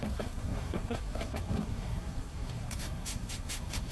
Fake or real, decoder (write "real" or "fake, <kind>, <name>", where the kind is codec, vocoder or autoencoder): fake, codec, SNAC